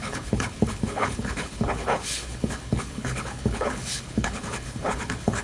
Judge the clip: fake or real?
fake